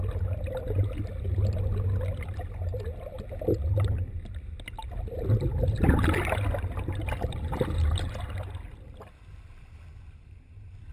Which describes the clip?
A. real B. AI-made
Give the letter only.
A